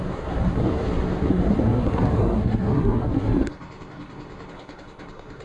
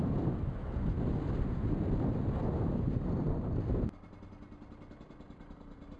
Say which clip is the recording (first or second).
second